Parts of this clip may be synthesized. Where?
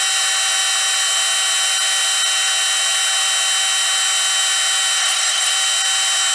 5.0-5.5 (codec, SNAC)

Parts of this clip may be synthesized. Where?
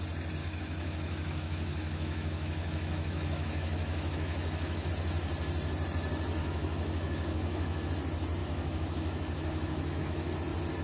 0.4-4.9 (autoencoder, DAC-VAE); 6.4-7.9; 8.4-10.3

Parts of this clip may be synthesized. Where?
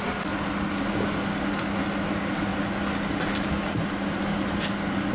none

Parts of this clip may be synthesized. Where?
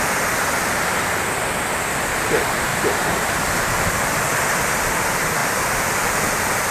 2.7-4.4 (vocoder, BigVGAN v2); 5.4-6.7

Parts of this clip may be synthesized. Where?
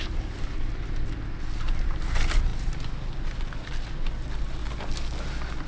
none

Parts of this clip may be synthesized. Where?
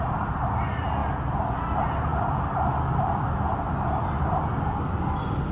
none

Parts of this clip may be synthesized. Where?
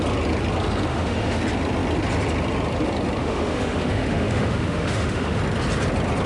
0.9-1.4 (autoencoder, DAC-VAE); 3.2-5.4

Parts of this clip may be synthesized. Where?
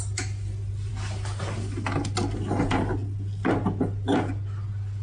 none